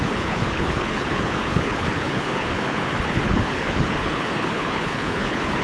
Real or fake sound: fake